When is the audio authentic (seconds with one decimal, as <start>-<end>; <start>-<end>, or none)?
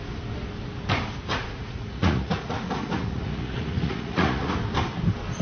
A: 0.0-1.3; 4.5-5.4